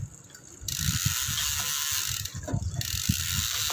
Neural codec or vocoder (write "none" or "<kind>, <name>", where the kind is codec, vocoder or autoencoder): none